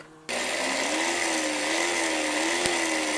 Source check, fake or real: real